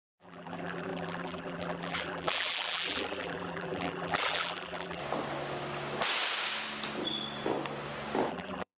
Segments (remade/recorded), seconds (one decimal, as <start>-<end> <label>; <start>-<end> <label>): 0.0-5.0 remade; 5.0-8.3 recorded; 8.3-8.8 remade